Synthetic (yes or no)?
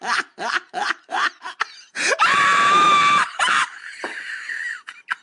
yes